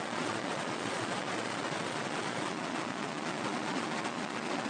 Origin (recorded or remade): remade